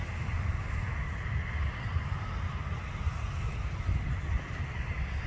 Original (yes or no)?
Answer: yes